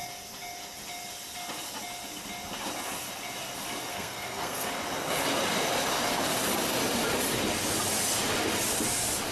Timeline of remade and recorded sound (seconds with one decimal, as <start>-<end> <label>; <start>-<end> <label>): 0.0-3.9 recorded; 3.9-4.7 remade; 4.7-9.3 recorded